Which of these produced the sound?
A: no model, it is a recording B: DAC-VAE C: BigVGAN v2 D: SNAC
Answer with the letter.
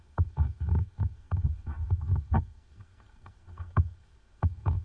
D